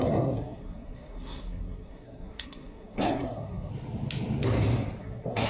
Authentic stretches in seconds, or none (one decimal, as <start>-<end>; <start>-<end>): 3.7-5.0